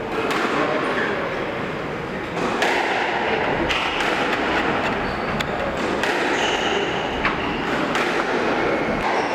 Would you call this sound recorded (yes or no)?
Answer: yes